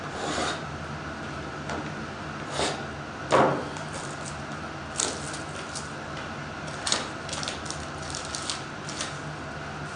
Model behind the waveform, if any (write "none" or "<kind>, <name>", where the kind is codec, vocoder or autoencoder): none